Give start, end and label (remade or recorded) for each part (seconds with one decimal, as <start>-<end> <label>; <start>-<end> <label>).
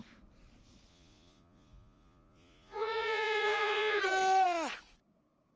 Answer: 0.0-0.9 recorded; 0.9-4.0 remade; 4.0-5.6 recorded